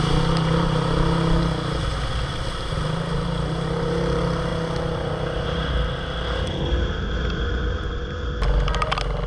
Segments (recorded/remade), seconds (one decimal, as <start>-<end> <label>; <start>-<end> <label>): 0.0-9.3 recorded